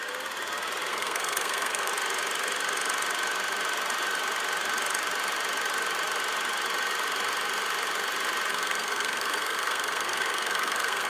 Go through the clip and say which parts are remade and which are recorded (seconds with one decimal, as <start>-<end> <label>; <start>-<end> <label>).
0.0-0.9 recorded; 0.9-1.9 remade; 1.9-8.5 recorded; 8.5-11.1 remade